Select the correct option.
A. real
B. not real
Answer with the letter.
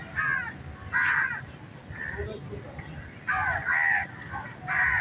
A